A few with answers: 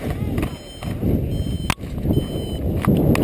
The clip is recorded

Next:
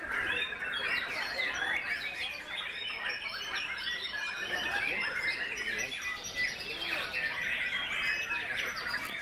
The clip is recorded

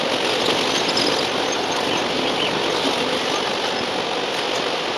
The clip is recorded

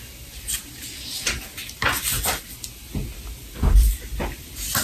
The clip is recorded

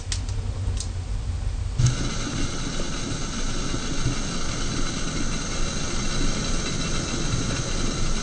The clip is recorded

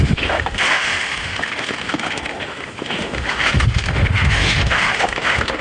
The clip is remade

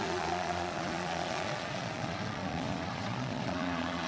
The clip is remade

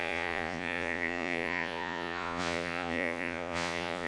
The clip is remade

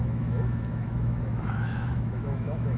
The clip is remade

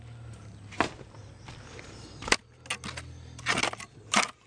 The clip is recorded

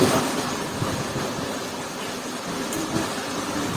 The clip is recorded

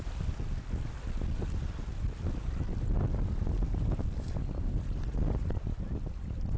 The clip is recorded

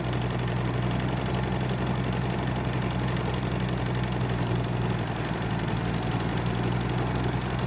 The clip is recorded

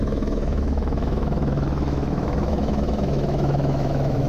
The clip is remade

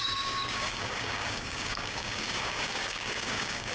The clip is remade